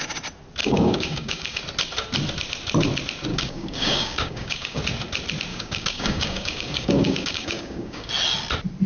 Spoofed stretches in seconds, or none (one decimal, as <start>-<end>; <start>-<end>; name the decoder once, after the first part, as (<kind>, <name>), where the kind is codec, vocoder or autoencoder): 0.6-1.6 (codec, DAC); 3.3-4.8; 5.5-8.1